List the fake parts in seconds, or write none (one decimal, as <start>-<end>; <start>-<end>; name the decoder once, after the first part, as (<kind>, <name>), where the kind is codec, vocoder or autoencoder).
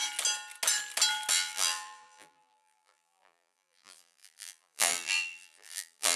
1.3-6.2 (vocoder, BigVGAN v2)